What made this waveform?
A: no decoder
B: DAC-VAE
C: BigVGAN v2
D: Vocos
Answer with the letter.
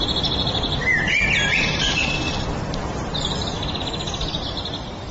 C